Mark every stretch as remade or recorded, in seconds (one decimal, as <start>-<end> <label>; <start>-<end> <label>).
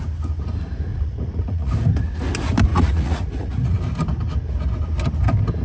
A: 0.0-0.9 recorded; 0.9-1.7 remade; 1.7-2.7 recorded; 2.7-3.8 remade; 3.8-5.6 recorded